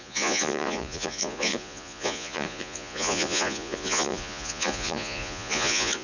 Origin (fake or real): fake